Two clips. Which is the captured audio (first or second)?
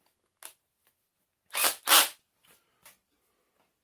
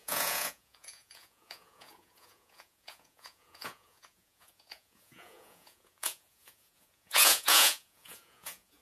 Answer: first